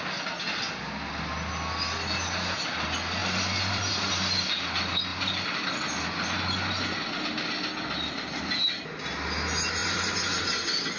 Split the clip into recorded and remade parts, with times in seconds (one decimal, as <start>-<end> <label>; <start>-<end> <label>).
0.0-3.2 recorded; 3.2-4.1 remade; 4.1-5.1 recorded; 5.1-6.0 remade; 6.0-9.8 recorded; 9.8-11.0 remade

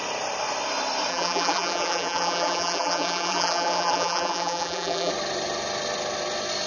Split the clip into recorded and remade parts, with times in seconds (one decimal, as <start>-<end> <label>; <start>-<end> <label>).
0.0-1.1 recorded; 1.1-5.1 remade; 5.1-6.7 recorded

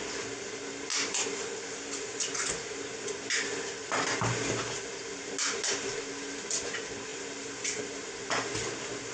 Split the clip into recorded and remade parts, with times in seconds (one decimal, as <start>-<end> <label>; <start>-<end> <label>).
0.0-0.9 recorded; 0.9-2.2 remade; 2.2-7.1 recorded; 7.1-7.8 remade; 7.8-9.1 recorded

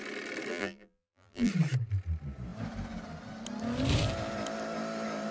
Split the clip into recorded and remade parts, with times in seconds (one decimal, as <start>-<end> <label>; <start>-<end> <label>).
0.0-0.5 recorded; 0.5-1.5 remade; 1.5-5.3 recorded

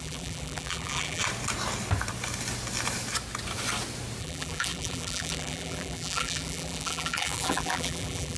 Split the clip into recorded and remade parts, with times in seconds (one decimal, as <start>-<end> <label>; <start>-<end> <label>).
0.0-1.2 remade; 1.2-4.2 recorded; 4.2-8.4 remade

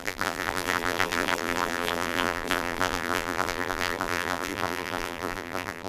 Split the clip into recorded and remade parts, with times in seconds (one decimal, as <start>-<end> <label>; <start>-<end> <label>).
0.0-5.9 remade